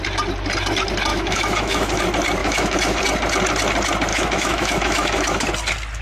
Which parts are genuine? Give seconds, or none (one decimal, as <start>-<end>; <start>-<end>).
0.0-1.1; 2.0-2.4; 3.0-4.1; 5.5-6.0